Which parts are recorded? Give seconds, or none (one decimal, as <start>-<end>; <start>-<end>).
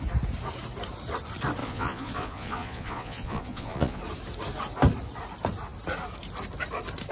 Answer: 0.0-1.6; 4.0-7.1